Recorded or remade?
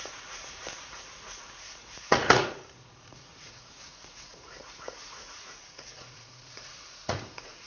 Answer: remade